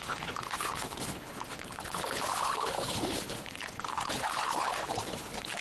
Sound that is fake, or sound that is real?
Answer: fake